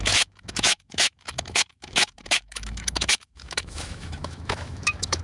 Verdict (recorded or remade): remade